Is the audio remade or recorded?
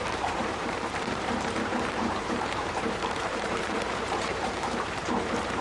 remade